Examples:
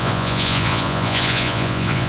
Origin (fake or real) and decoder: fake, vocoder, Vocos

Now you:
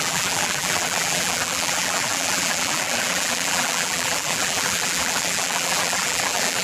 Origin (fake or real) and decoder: fake, vocoder, BigVGAN v2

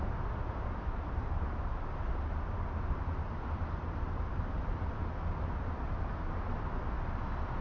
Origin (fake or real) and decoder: real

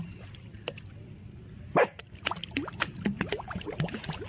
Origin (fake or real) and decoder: real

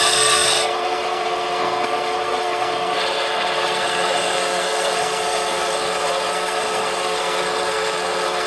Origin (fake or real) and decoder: fake, codec, SNAC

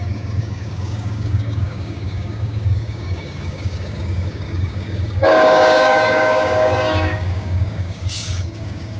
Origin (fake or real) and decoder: fake, codec, DAC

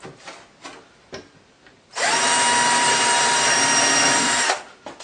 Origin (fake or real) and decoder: real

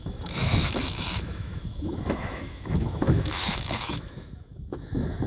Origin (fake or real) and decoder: fake, autoencoder, DAC-VAE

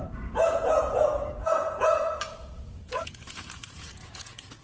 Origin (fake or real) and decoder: fake, vocoder, Vocos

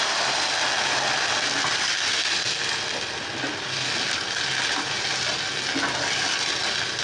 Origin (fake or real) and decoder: real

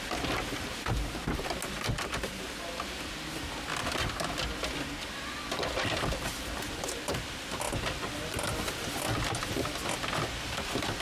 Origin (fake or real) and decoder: real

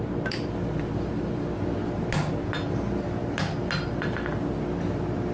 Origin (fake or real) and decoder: real